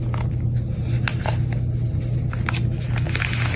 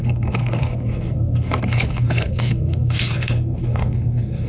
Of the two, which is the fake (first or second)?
second